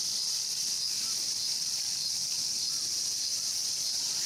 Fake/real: real